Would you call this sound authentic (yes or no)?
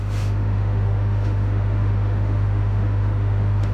no